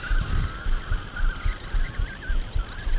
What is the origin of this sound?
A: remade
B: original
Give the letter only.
B